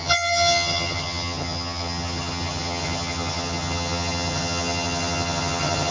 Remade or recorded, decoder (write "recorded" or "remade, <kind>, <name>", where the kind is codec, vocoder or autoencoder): remade, vocoder, HiFi-GAN